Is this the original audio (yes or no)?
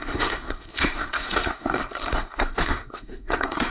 no